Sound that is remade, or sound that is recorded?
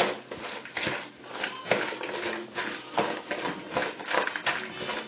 recorded